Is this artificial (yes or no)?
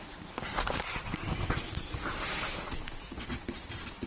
yes